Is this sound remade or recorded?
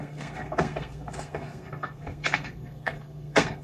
remade